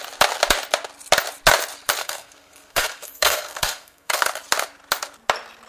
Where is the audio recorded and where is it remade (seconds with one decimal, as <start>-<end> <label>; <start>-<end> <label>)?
0.0-2.0 recorded; 2.0-4.2 remade; 4.2-5.7 recorded